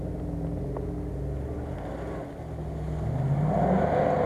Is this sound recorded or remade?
recorded